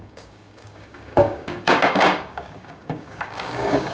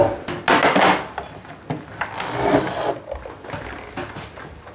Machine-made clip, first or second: first